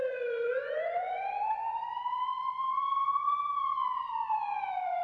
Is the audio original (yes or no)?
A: no